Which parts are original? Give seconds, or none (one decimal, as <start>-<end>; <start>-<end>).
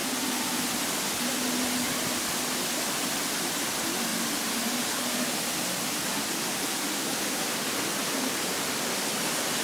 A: 0.0-9.6